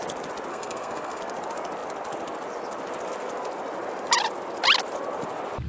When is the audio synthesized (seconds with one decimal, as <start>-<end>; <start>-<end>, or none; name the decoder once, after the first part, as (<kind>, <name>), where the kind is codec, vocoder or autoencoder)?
0.5-1.2 (codec, SNAC)